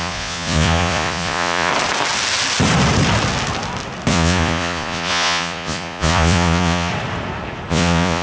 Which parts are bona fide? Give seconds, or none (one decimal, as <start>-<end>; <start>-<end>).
1.7-4.1; 6.9-7.7

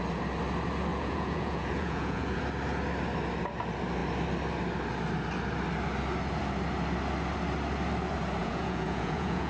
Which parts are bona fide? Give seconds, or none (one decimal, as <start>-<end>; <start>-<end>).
0.0-0.9; 2.4-8.4